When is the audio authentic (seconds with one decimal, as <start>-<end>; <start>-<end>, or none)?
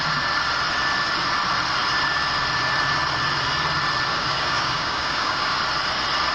0.0-4.1; 5.6-6.3